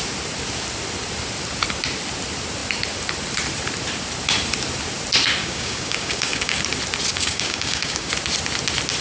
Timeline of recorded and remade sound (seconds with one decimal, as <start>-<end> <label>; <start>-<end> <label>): 0.0-5.4 recorded; 5.4-6.6 remade; 6.6-7.1 recorded; 7.1-8.1 remade; 8.1-9.0 recorded